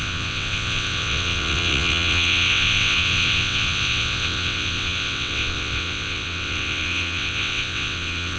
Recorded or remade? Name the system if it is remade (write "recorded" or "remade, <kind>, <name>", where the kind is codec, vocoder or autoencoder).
remade, vocoder, WaveNeXt